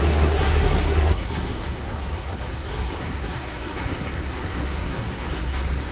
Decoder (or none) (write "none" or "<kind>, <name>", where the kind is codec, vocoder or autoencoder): codec, SNAC